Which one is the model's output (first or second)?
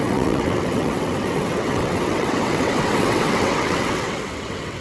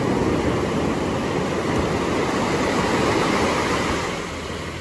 first